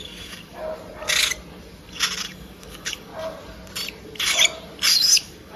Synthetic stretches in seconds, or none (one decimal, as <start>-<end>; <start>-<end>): 0.0-0.6; 2.2-3.1; 4.9-5.6

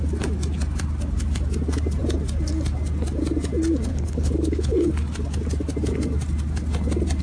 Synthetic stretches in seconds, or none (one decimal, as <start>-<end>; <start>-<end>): 3.9-4.9

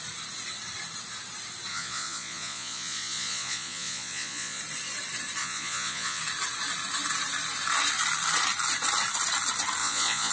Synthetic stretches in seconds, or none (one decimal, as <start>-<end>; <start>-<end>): 1.7-4.6; 5.4-6.2; 9.8-10.3

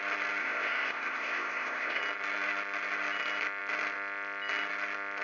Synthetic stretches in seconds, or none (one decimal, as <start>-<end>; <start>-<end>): 0.4-2.0

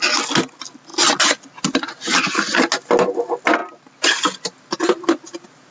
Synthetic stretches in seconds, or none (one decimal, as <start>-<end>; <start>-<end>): none